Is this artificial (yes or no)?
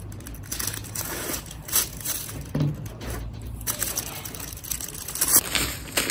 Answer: no